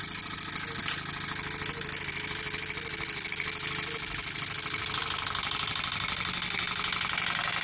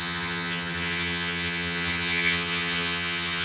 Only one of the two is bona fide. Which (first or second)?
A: first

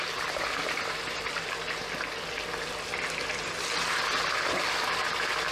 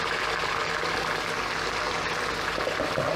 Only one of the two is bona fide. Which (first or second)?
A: second